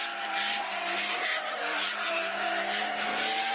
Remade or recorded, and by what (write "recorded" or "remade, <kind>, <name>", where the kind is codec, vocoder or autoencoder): recorded